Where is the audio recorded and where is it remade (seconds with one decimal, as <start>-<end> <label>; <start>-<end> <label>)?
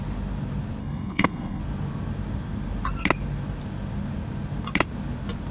0.0-0.8 recorded; 0.8-1.6 remade; 1.6-5.5 recorded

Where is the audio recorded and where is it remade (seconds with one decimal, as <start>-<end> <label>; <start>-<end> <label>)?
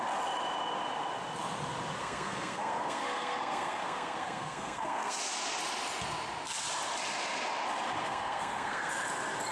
0.0-2.0 recorded; 2.0-5.2 remade; 5.2-8.0 recorded; 8.0-8.9 remade; 8.9-9.5 recorded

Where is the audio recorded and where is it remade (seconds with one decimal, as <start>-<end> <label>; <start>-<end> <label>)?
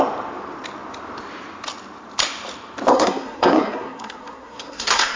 0.0-2.9 recorded; 2.9-5.2 remade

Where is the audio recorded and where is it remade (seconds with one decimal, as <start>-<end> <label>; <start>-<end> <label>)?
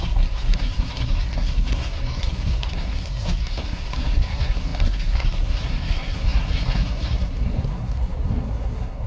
0.0-9.1 remade